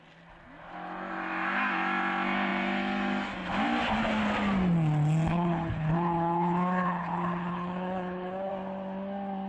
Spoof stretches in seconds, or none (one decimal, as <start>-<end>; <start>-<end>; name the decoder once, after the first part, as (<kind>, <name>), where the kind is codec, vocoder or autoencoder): 5.3-8.5 (codec, HILCodec)